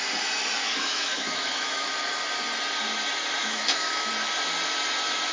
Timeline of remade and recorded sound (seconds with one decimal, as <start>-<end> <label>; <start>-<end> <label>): 0.0-0.6 recorded; 0.6-1.9 remade; 1.9-3.4 recorded; 3.4-4.1 remade; 4.1-5.3 recorded